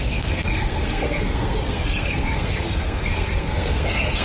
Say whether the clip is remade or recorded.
remade